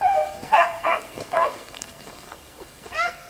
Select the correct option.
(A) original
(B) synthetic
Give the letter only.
B